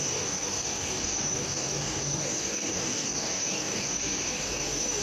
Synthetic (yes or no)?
yes